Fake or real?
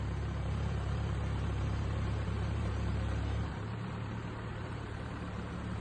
fake